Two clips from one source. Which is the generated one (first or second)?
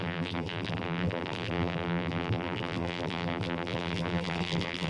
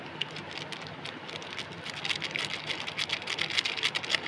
first